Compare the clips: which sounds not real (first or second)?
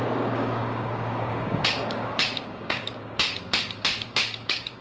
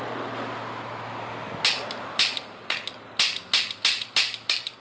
first